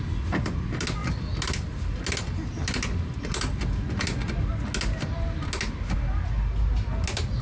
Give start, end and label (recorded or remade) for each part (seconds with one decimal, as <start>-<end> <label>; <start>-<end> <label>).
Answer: 0.0-7.4 recorded